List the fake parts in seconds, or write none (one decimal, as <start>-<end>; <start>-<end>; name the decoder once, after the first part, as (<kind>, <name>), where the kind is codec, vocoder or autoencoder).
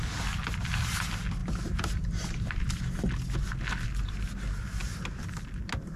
1.4-3.1 (vocoder, BigVGAN v2)